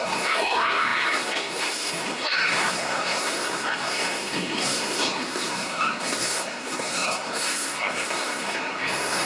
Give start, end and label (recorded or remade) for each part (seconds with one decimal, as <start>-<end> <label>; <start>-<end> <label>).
0.0-9.3 remade